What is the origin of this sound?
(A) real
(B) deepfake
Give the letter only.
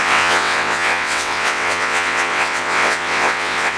B